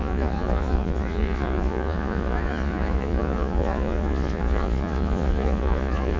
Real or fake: fake